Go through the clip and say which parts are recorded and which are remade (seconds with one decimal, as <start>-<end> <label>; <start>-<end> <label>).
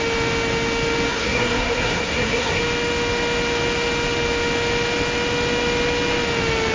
0.0-1.1 recorded; 1.1-2.6 remade; 2.6-6.7 recorded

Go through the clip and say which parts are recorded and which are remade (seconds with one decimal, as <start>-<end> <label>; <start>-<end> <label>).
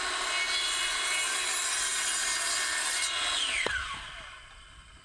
0.0-5.0 recorded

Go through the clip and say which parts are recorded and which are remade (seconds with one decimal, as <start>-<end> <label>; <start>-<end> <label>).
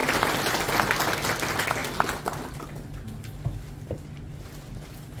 0.0-5.2 recorded